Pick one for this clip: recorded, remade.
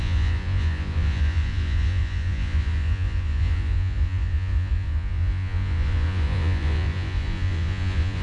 remade